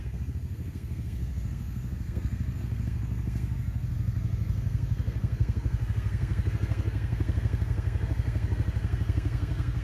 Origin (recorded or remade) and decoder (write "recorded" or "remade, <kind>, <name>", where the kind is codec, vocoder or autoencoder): remade, codec, SNAC